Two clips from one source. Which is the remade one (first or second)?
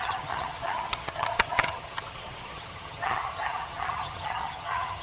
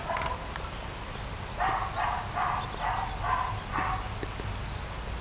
first